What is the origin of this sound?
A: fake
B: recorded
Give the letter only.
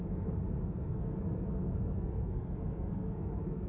A